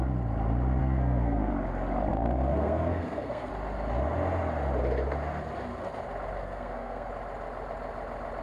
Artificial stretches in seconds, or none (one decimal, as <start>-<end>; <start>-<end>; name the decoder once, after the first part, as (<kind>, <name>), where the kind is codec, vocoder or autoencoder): 0.8-1.5 (codec, SNAC); 2.1-3.5; 6.4-7.1